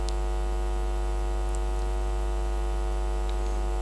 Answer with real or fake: real